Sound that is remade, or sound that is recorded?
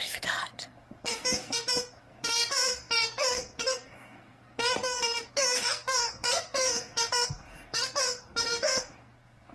remade